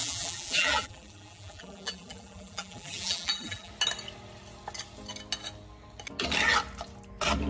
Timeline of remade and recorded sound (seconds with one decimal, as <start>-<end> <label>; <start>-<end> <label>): 0.0-3.7 remade; 3.7-7.5 recorded